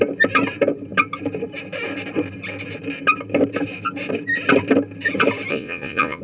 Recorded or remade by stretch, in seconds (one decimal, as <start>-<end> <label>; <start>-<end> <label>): 0.0-5.5 recorded; 5.5-6.2 remade